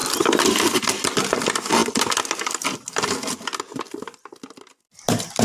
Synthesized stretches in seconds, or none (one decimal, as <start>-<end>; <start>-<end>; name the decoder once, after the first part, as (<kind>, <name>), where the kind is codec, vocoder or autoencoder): none